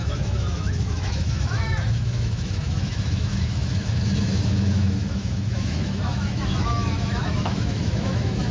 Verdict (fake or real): fake